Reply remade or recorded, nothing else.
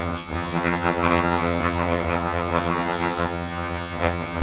remade